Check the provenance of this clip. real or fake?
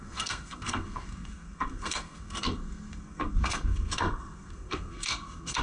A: fake